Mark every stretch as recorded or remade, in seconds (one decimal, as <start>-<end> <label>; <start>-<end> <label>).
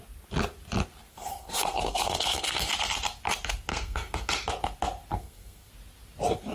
0.0-1.1 recorded; 1.1-2.7 remade; 2.7-3.7 recorded; 3.7-4.3 remade; 4.3-5.1 recorded; 5.1-5.7 remade; 5.7-6.5 recorded